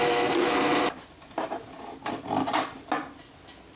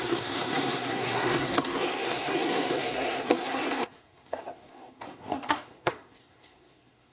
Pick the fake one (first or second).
second